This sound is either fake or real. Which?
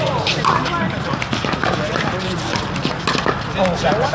real